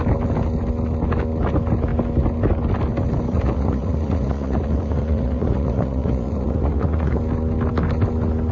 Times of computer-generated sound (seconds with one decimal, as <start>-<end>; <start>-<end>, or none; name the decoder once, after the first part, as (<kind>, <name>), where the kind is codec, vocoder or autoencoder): 3.3-7.2 (vocoder, Vocos)

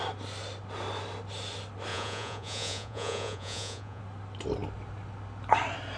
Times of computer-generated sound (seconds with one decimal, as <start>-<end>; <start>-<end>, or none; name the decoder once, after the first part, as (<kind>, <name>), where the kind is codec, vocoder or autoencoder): 1.9-4.0 (vocoder, Vocos)

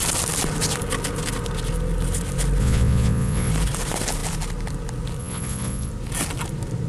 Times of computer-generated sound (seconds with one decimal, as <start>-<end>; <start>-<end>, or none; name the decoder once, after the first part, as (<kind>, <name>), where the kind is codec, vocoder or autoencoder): 2.6-3.5 (vocoder, Vocos); 5.2-5.9